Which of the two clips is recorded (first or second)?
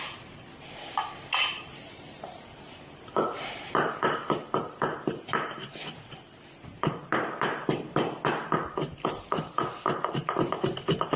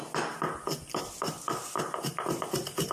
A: second